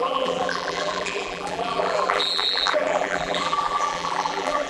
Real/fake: fake